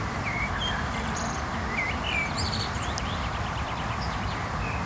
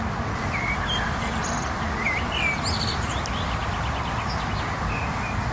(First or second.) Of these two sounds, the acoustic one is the second